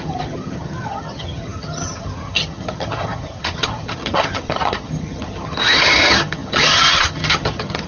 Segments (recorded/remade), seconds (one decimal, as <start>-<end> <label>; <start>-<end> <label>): 0.0-7.9 remade